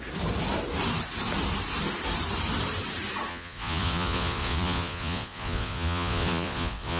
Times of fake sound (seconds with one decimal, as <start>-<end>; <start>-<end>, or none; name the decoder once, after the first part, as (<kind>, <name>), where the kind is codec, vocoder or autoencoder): 3.3-7.0 (vocoder, Vocos)